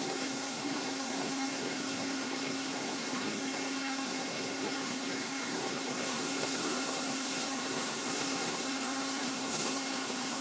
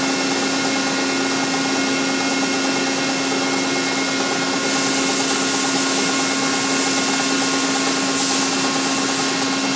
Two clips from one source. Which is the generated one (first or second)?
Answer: first